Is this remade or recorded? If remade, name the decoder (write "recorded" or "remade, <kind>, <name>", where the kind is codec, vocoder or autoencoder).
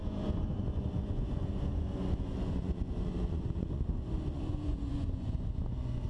remade, vocoder, Vocos